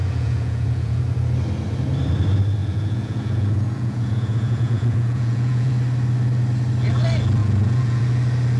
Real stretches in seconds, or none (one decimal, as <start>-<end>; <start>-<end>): 1.0-2.6; 5.7-7.4; 8.0-8.6